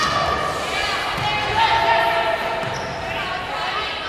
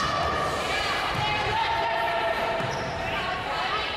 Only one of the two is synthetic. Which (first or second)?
second